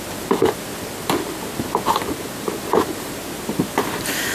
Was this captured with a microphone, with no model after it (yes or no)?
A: yes